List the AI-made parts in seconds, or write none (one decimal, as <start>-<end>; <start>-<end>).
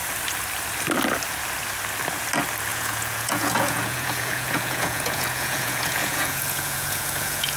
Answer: 2.7-7.6